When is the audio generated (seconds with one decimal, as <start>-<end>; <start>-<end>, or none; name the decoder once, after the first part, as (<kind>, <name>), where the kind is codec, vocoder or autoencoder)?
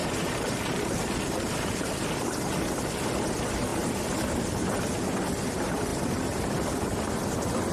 0.0-1.7 (vocoder, BigVGAN v2); 5.9-6.5